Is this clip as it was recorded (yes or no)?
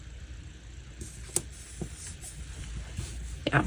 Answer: yes